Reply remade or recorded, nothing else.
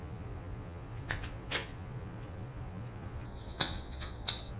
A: remade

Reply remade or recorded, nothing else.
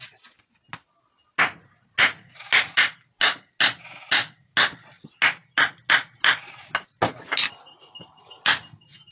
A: recorded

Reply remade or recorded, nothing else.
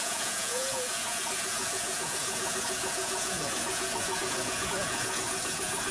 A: remade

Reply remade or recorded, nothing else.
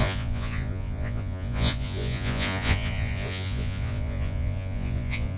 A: remade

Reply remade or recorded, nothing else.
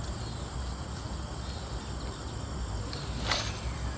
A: recorded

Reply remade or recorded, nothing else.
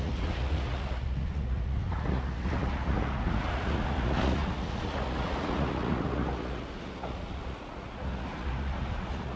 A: remade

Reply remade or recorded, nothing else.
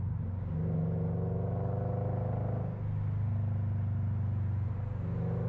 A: recorded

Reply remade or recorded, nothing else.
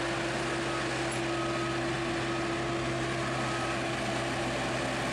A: recorded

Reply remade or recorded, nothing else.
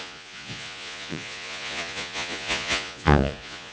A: remade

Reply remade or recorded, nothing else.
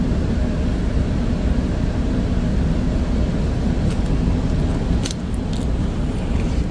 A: recorded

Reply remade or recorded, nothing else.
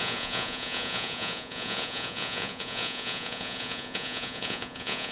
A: remade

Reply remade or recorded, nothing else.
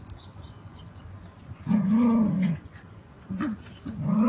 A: remade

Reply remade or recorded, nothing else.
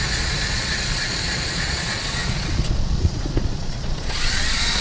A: remade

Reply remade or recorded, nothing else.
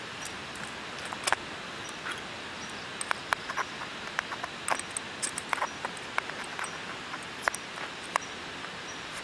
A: recorded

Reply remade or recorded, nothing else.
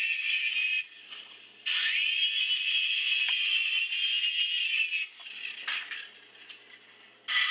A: recorded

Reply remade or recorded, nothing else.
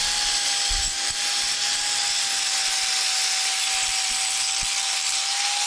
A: recorded